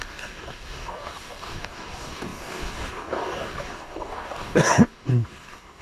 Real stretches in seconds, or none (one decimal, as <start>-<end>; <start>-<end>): none